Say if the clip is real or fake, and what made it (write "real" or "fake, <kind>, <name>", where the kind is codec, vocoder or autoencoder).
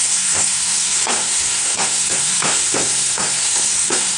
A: fake, codec, SNAC